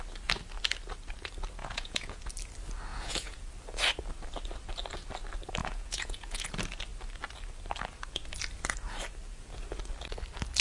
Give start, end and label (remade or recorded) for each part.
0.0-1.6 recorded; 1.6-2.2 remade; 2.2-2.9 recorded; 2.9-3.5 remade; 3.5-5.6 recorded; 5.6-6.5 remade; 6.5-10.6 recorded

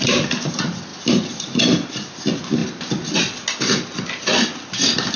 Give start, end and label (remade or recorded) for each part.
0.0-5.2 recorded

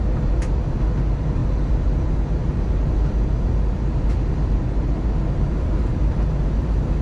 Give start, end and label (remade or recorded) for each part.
0.0-7.0 recorded

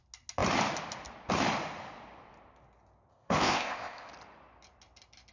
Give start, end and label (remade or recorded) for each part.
0.0-3.1 recorded; 3.1-4.1 remade; 4.1-5.3 recorded

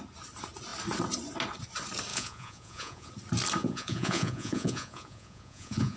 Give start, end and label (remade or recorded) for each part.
0.0-2.1 recorded; 2.1-3.1 remade; 3.1-3.6 recorded; 3.6-6.0 remade